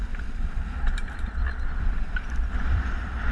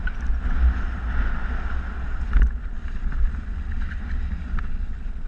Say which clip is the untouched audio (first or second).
second